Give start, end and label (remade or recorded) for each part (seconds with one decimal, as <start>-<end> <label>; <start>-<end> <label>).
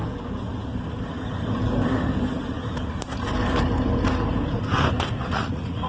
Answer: 0.0-5.2 recorded; 5.2-5.9 remade